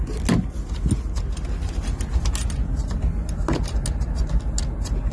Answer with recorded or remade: recorded